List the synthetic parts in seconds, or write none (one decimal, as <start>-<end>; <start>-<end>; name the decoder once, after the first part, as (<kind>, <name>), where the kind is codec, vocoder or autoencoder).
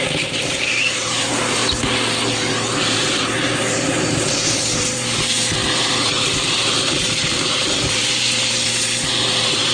0.0-1.6 (vocoder, BigVGAN v2); 2.8-9.7